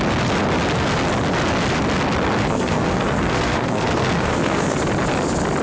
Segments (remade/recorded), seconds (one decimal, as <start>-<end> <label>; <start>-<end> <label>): 0.0-2.4 recorded; 2.4-4.8 remade; 4.8-5.6 recorded